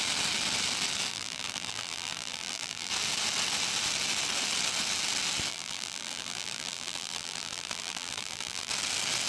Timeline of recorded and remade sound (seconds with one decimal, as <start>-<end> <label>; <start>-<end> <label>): 0.0-1.1 recorded; 1.1-2.9 remade; 2.9-5.5 recorded; 5.5-8.7 remade; 8.7-9.3 recorded